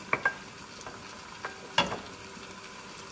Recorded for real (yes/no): yes